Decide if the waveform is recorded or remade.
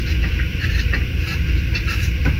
recorded